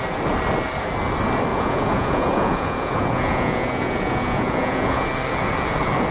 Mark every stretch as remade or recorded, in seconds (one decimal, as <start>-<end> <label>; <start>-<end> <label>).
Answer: 0.0-1.5 recorded; 1.5-5.1 remade; 5.1-6.1 recorded

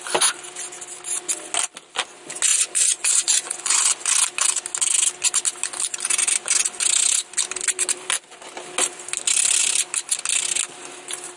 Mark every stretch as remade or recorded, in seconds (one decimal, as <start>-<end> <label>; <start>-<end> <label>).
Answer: 0.0-2.5 recorded; 2.5-3.9 remade; 3.9-11.4 recorded

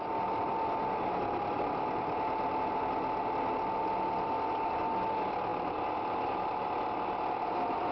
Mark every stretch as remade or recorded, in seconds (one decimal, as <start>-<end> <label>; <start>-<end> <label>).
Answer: 0.0-7.9 recorded

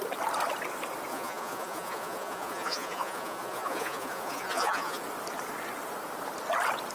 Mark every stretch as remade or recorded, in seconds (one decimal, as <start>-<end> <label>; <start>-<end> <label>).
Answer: 0.0-1.1 recorded; 1.1-5.0 remade; 5.0-6.9 recorded

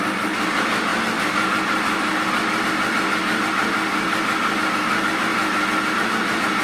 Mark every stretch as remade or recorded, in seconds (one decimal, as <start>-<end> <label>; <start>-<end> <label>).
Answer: 0.0-6.6 recorded